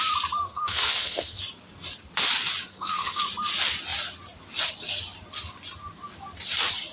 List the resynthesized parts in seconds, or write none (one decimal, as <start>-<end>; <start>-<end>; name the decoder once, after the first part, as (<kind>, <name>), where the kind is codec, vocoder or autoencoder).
0.4-1.4 (codec, SNAC); 2.7-3.2